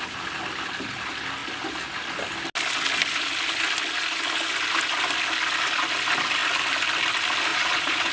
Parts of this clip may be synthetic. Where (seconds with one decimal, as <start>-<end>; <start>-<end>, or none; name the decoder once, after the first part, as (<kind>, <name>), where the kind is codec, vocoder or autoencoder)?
7.5-8.1 (vocoder, Vocos)

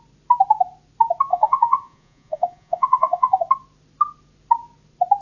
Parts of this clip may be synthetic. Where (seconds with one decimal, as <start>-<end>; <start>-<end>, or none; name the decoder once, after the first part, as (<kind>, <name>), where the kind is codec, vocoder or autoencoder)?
1.3-3.4 (vocoder, Vocos)

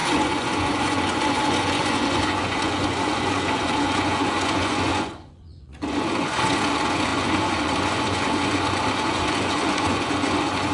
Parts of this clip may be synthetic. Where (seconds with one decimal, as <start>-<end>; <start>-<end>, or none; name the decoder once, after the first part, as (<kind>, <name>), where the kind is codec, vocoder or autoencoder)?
0.0-10.7 (vocoder, Vocos)

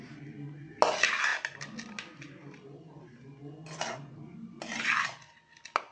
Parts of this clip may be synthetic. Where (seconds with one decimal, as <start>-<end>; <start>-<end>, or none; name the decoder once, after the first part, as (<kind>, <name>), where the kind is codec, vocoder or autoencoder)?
none

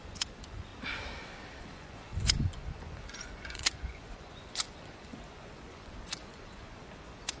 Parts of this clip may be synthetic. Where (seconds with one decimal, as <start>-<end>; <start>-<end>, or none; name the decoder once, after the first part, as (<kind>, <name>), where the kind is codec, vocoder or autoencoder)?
0.0-0.7 (vocoder, Vocos); 1.6-7.4

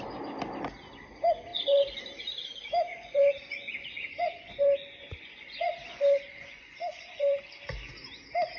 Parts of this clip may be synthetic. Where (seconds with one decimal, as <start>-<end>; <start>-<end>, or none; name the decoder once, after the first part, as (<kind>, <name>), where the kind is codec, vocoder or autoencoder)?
1.5-2.0 (vocoder, Vocos); 2.9-7.9

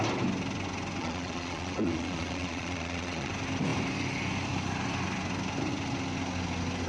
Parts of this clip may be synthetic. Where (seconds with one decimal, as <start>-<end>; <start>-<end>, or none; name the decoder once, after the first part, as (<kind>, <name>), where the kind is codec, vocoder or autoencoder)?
1.0-3.3 (vocoder, Vocos)